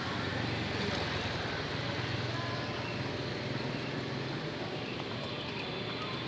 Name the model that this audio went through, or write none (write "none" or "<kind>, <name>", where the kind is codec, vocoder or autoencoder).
none